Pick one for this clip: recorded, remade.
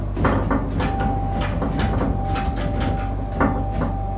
recorded